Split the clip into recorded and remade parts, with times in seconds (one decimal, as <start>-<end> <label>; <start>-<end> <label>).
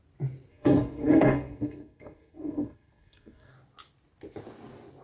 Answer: 0.0-0.5 recorded; 0.5-3.5 remade; 3.5-5.0 recorded